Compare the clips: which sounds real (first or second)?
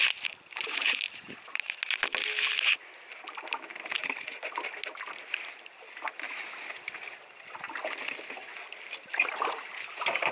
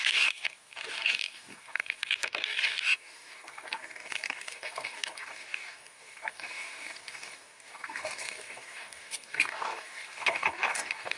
first